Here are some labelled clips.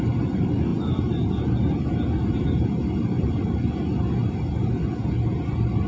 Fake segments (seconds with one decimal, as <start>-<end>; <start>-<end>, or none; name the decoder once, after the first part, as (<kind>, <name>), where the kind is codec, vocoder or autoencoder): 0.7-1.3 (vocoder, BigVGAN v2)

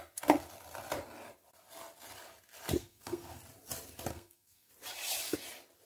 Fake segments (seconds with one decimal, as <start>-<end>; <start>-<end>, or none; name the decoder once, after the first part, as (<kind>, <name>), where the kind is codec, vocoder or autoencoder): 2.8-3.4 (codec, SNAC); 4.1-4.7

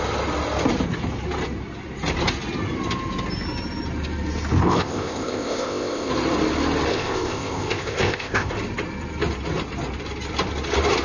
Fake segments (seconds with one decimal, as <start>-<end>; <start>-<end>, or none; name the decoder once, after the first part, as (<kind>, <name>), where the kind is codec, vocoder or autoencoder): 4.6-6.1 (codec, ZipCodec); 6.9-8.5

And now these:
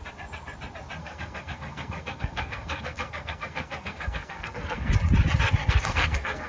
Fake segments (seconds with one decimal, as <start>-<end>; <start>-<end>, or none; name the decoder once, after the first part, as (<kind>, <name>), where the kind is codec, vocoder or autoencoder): 1.0-4.9 (codec, SNAC); 5.6-6.5

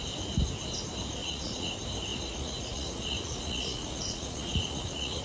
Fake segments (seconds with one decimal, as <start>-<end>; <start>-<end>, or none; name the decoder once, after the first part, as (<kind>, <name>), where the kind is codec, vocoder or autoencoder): 1.2-1.7 (vocoder, Vocos); 2.1-5.2